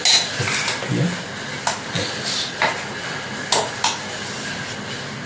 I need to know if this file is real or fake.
real